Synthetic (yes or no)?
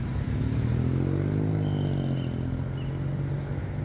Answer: no